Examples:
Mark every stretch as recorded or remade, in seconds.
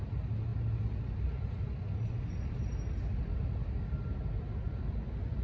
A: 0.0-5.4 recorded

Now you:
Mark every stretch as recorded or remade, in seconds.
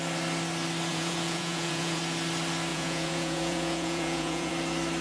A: 0.0-0.9 recorded; 0.9-2.0 remade; 2.0-2.7 recorded; 2.7-4.5 remade; 4.5-5.0 recorded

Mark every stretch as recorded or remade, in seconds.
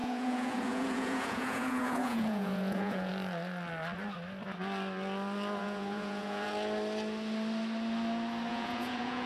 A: 0.0-3.1 remade; 3.1-5.6 recorded; 5.6-6.5 remade; 6.5-8.5 recorded; 8.5-9.3 remade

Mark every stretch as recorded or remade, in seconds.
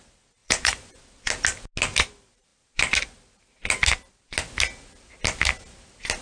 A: 0.0-0.4 recorded; 0.4-1.0 remade; 1.0-6.2 recorded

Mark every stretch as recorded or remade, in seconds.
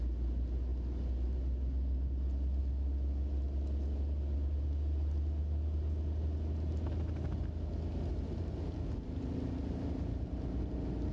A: 0.0-11.1 recorded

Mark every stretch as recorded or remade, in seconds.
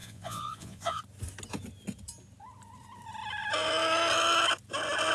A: 0.0-1.0 remade; 1.0-5.1 recorded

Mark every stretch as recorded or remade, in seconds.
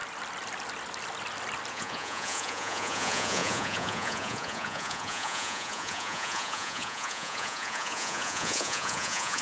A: 0.0-1.7 recorded; 1.7-9.4 remade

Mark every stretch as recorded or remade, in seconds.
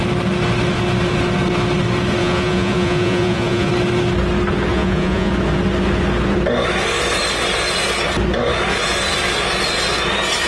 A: 0.0-2.2 recorded; 2.2-3.7 remade; 3.7-4.7 recorded; 4.7-5.3 remade; 5.3-10.5 recorded